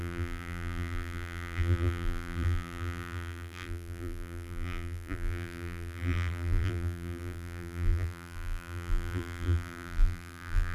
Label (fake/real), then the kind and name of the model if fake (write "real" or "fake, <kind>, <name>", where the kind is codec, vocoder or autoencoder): fake, vocoder, BigVGAN v2